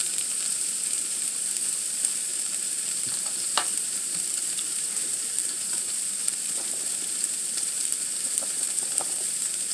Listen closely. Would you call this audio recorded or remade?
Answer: remade